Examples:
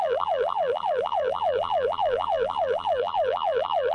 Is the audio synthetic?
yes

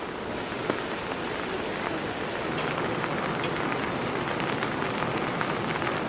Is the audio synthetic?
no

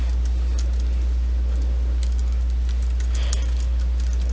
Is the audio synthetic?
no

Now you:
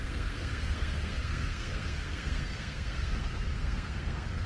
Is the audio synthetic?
yes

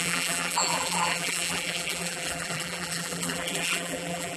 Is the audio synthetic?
yes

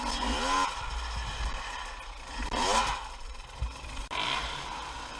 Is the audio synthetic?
no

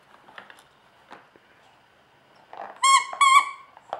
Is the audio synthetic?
no